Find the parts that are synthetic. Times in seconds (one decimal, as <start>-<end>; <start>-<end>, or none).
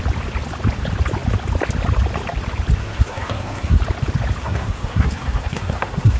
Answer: 2.8-3.8; 4.4-6.2